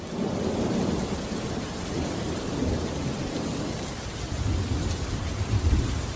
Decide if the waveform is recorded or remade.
recorded